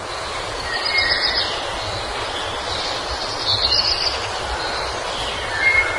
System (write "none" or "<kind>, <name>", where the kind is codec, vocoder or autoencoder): none